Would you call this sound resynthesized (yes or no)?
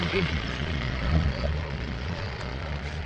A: yes